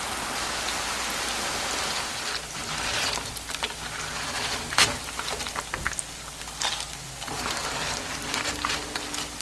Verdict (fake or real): real